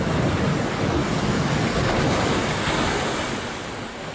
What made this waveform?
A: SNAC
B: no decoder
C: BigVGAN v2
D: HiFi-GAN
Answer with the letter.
B